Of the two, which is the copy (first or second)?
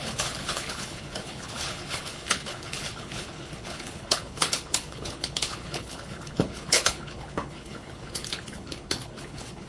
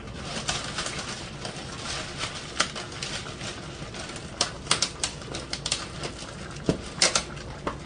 first